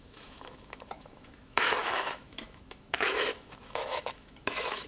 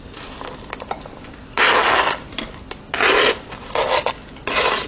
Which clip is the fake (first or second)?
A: first